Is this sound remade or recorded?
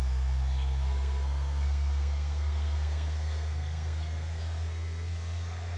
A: remade